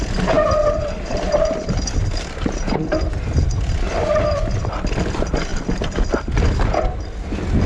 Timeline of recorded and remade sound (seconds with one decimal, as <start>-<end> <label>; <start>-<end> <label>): 0.0-7.7 recorded